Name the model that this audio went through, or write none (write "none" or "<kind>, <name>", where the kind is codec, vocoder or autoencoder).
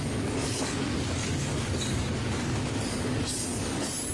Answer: codec, DAC